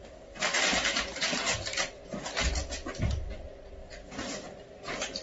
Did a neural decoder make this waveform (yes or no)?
no